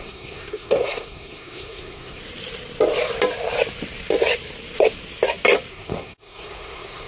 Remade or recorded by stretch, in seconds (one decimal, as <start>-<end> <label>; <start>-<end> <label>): 0.0-2.2 remade; 2.2-5.7 recorded; 5.7-7.1 remade